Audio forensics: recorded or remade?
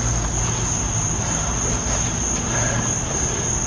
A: recorded